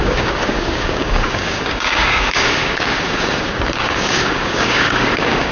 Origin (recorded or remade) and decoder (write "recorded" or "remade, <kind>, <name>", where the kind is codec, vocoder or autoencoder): remade, codec, DAC